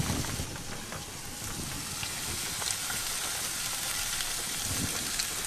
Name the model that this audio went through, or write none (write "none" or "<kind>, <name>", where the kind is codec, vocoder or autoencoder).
none